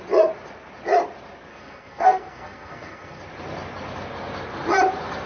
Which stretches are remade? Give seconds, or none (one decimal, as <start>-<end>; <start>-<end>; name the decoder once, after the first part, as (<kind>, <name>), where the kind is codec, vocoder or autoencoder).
1.5-3.2 (codec, SNAC)